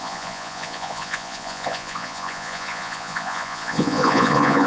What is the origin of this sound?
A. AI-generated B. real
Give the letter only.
A